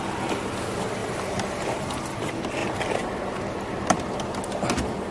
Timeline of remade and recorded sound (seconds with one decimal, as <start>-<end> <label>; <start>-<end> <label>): 0.0-1.0 recorded; 1.0-1.8 remade; 1.8-2.6 recorded; 2.6-4.2 remade; 4.2-5.1 recorded